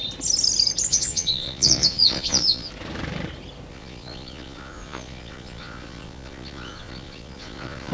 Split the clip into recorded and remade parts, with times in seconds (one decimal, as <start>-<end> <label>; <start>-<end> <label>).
0.0-0.9 recorded; 0.9-2.7 remade; 2.7-3.7 recorded; 3.7-7.9 remade